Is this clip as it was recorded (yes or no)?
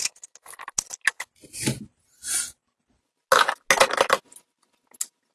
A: yes